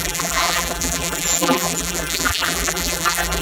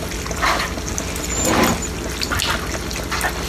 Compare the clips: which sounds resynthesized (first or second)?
first